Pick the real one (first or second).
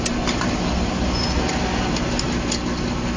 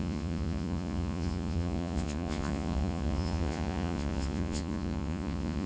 first